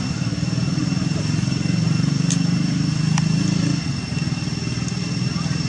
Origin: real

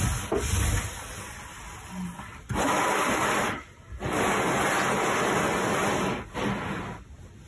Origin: real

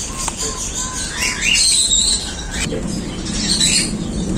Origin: real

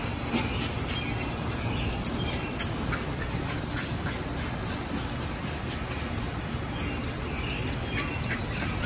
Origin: real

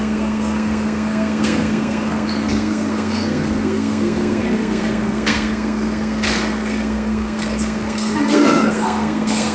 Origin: fake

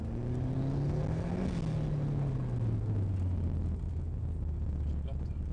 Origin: real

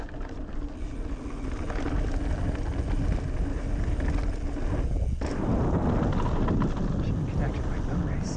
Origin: real